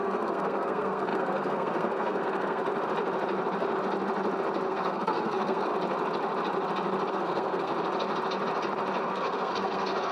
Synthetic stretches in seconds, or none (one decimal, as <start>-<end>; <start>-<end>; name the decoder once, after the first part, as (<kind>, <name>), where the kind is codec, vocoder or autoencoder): 0.0-2.6 (codec, SNAC); 4.7-5.7; 7.1-7.7; 9.1-10.1